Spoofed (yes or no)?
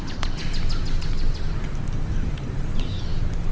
no